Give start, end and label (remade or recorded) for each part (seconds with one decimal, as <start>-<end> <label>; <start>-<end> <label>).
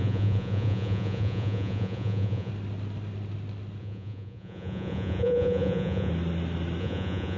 0.0-2.5 remade; 2.5-3.8 recorded; 3.8-6.1 remade; 6.1-6.8 recorded; 6.8-7.4 remade